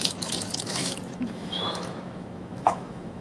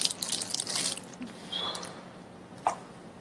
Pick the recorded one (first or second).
second